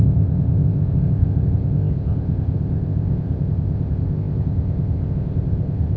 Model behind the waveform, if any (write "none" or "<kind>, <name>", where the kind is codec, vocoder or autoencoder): codec, ZipCodec